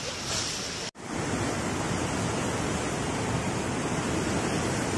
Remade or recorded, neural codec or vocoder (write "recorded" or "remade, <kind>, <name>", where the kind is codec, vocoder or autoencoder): recorded